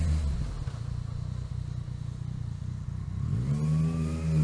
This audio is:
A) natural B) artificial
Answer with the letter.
A